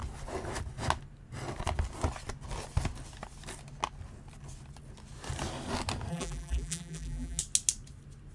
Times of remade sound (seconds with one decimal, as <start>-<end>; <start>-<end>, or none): 6.1-7.4